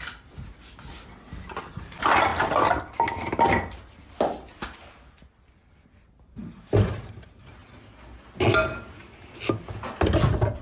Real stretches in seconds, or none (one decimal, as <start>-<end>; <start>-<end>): 0.0-10.6